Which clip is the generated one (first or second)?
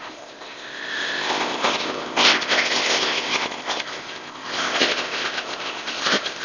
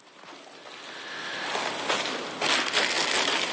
first